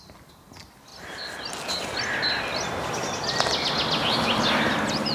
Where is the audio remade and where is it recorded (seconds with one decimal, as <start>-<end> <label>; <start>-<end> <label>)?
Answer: 0.0-0.9 recorded; 0.9-1.4 remade; 1.4-5.1 recorded